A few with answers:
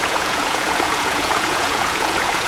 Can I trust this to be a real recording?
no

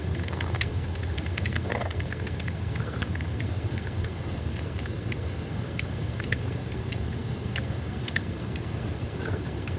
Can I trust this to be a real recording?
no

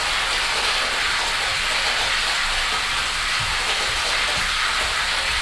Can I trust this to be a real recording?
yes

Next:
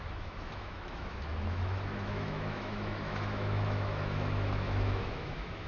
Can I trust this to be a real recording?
no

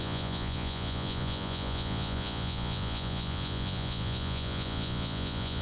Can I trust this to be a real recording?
no